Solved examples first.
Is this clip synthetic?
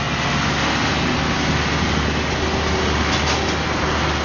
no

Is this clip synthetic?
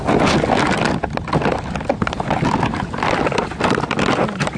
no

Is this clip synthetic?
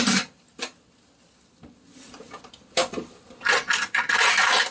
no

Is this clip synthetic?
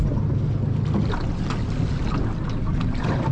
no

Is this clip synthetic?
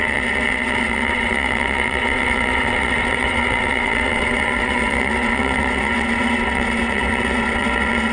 yes